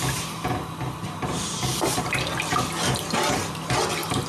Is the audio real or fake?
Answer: fake